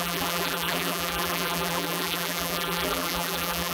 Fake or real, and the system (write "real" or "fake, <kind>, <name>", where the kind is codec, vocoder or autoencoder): fake, vocoder, BigVGAN v2